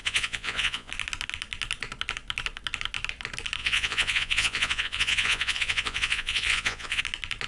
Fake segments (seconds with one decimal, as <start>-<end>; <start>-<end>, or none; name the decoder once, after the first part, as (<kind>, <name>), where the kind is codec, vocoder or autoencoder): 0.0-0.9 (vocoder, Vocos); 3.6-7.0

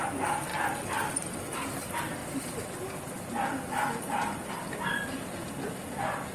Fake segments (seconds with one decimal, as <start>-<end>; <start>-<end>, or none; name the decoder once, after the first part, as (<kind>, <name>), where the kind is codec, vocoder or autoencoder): none

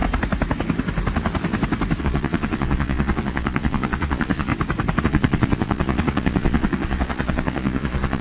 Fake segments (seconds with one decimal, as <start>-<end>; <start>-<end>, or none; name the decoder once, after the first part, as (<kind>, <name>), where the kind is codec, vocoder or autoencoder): 2.0-4.5 (vocoder, Vocos); 5.0-8.2

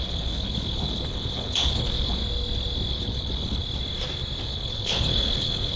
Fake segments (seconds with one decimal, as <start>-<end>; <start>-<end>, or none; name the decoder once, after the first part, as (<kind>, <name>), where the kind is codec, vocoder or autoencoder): 0.0-2.2 (codec, HILCodec); 2.9-3.6; 4.4-5.8

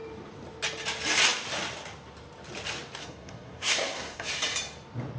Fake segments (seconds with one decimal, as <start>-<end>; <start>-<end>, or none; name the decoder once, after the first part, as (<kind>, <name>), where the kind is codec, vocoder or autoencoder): 3.0-4.3 (codec, SNAC)

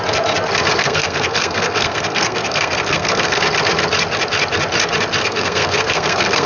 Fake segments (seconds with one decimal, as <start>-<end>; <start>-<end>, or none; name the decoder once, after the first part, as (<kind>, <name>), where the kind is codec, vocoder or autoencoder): 0.8-3.4 (codec, SNAC); 5.2-6.5

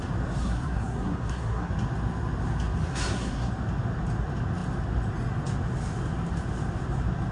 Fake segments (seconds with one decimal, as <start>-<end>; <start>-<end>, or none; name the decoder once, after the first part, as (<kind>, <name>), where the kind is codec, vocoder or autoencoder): 0.4-1.7 (codec, SNAC); 2.9-3.5

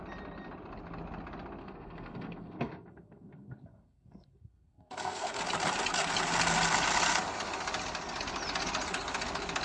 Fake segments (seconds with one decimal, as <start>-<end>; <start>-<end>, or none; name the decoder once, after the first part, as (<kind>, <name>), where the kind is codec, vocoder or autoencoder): 1.6-5.4 (codec, SNAC)